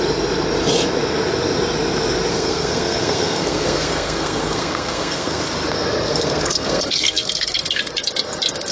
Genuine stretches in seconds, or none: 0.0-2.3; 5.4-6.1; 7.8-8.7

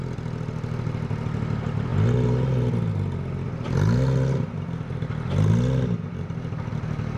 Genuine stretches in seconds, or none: 0.0-7.2

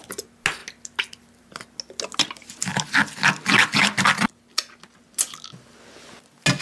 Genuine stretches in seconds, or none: 0.0-6.6

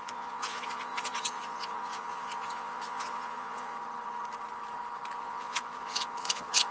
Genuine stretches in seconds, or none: 3.7-5.2

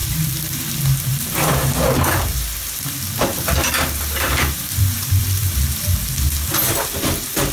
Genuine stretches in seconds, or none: 0.6-1.1; 1.6-3.3; 5.5-7.5

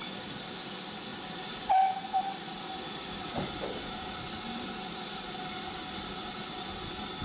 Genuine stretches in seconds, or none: 0.0-1.1; 4.2-7.2

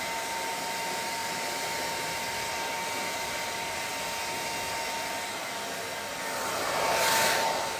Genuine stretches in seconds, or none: 0.0-1.2; 2.2-7.8

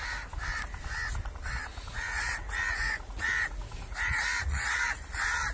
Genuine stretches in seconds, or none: 0.0-1.7; 5.0-5.5